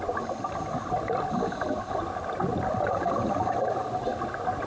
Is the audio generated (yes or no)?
no